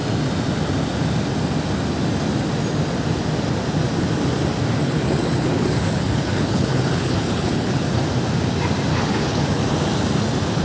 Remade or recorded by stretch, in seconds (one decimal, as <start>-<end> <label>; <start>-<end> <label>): 0.0-4.8 recorded; 4.8-7.8 remade; 7.8-8.9 recorded; 8.9-9.6 remade; 9.6-10.6 recorded